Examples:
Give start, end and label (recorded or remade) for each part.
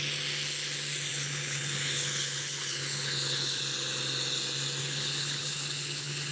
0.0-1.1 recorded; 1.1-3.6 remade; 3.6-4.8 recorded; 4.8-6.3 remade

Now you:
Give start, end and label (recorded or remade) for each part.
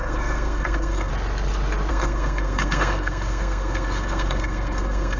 0.0-1.1 remade; 1.1-1.9 recorded; 1.9-5.2 remade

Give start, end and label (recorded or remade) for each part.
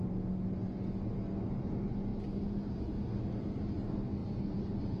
0.0-4.2 recorded; 4.2-5.0 remade